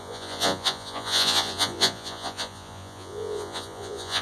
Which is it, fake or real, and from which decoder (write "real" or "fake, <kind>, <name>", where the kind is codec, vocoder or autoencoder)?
fake, vocoder, Vocos